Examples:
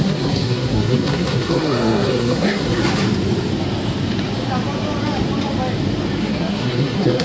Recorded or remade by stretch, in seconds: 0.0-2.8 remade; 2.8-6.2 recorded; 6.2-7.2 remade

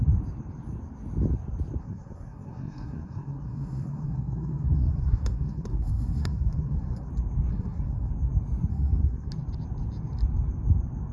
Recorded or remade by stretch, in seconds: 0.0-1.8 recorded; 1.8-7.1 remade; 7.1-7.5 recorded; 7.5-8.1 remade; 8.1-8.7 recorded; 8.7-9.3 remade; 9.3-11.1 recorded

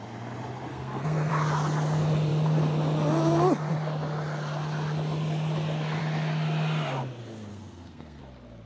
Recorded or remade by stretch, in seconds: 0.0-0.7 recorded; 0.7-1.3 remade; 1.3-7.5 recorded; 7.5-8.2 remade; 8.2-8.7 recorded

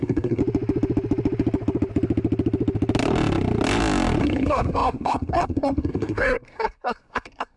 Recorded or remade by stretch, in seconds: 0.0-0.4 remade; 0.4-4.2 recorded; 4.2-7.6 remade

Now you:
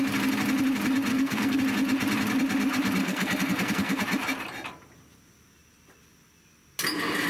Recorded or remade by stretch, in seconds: 0.0-1.1 recorded; 1.1-1.6 remade; 1.6-3.0 recorded; 3.0-4.0 remade; 4.0-7.3 recorded

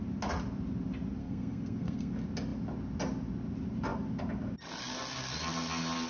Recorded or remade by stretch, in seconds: 0.0-1.2 recorded; 1.2-2.1 remade; 2.1-6.1 recorded

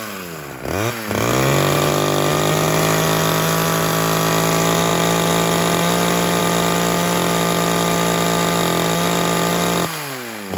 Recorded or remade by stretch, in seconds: 0.0-10.6 recorded